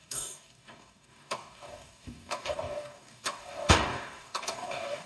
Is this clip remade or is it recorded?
remade